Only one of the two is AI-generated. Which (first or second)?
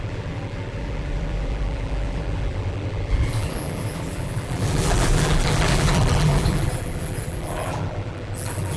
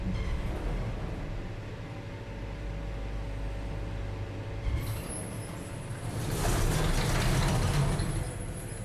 first